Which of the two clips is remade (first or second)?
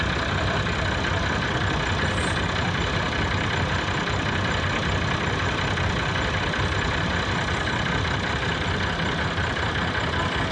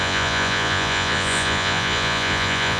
second